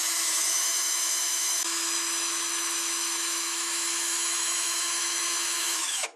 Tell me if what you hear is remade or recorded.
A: remade